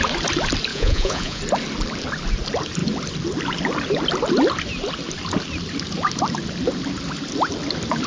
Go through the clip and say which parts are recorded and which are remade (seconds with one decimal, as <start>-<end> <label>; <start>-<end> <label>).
0.0-0.7 recorded; 0.7-1.4 remade; 1.4-8.1 recorded

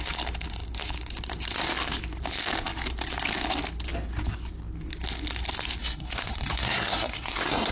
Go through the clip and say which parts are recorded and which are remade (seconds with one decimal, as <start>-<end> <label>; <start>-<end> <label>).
0.0-5.8 recorded; 5.8-7.7 remade

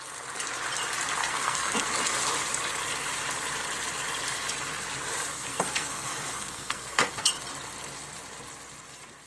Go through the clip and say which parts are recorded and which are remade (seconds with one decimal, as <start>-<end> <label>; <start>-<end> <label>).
0.0-1.2 recorded; 1.2-1.9 remade; 1.9-5.3 recorded; 5.3-7.3 remade; 7.3-9.3 recorded